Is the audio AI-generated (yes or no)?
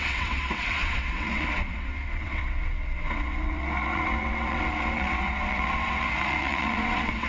yes